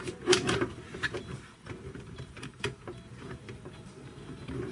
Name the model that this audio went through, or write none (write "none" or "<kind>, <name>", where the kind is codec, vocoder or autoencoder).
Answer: vocoder, BigVGAN v2